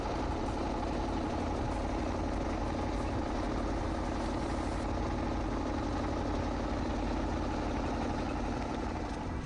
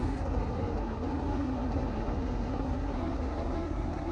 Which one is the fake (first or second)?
second